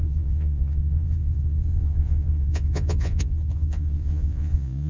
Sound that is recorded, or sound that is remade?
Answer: remade